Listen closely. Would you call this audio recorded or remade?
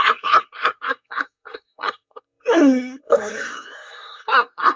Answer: remade